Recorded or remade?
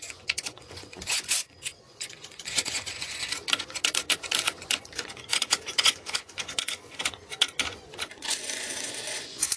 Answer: remade